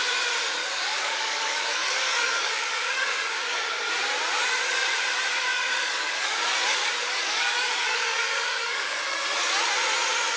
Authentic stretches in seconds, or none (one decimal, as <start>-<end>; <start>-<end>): 0.0-0.6; 3.9-5.5; 9.2-10.4